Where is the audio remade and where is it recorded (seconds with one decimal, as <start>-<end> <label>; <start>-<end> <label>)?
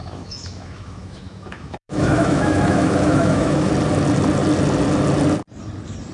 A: 0.0-3.7 remade; 3.7-6.1 recorded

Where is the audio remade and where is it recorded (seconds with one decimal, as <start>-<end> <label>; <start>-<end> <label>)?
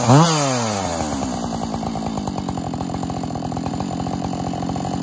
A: 0.0-5.0 recorded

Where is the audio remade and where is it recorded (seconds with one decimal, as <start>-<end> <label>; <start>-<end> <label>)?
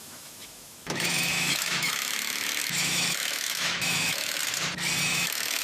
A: 0.0-4.4 remade; 4.4-5.0 recorded; 5.0-5.6 remade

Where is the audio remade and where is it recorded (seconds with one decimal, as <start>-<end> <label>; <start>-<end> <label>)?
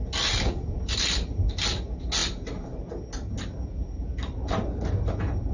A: 0.0-5.5 recorded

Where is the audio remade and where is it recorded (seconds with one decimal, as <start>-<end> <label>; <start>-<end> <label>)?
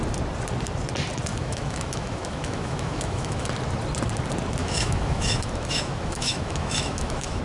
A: 0.0-1.3 recorded; 1.3-3.5 remade; 3.5-4.6 recorded; 4.6-7.4 remade